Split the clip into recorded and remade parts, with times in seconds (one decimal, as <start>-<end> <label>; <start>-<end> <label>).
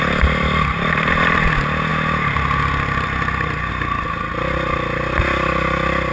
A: 0.0-6.1 recorded